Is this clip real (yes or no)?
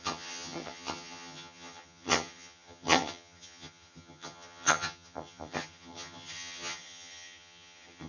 no